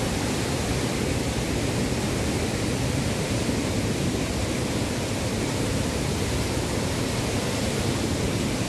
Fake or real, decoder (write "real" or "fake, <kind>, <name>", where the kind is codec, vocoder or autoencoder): fake, vocoder, BigVGAN v2